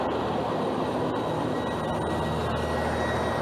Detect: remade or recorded recorded